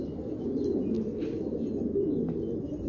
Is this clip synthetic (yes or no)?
no